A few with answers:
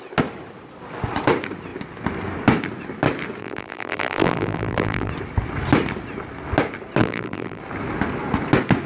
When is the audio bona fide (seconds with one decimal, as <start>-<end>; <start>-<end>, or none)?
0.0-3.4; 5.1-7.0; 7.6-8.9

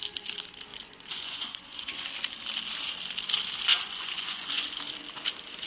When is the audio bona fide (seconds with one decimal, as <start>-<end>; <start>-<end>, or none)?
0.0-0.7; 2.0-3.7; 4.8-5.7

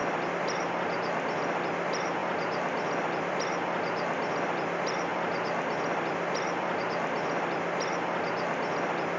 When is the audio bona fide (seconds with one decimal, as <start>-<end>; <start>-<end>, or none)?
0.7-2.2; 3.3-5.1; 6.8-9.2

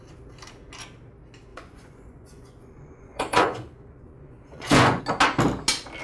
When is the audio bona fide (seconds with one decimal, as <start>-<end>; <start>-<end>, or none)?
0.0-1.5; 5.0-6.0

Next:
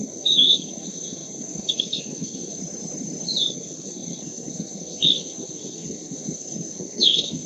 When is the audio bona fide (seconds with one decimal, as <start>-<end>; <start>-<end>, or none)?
2.6-3.5